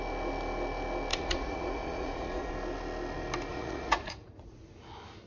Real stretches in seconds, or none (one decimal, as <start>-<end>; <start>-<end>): 0.0-1.1; 2.5-3.5; 4.8-5.3